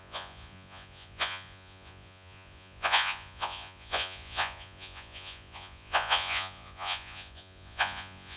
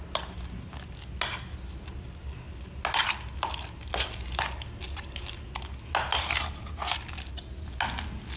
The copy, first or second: first